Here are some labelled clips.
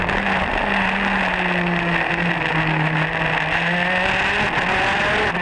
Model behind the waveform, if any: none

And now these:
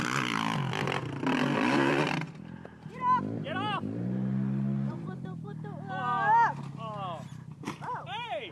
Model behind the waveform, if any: none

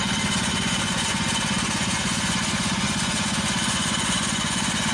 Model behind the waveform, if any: vocoder, Vocos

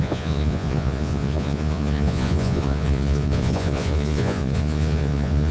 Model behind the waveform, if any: vocoder, Vocos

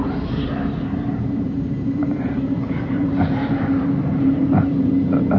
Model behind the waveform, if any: vocoder, BigVGAN v2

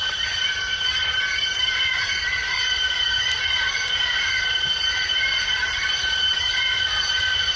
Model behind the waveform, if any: vocoder, BigVGAN v2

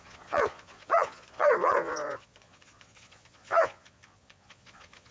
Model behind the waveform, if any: vocoder, Vocos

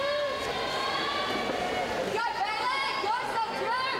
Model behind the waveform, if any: none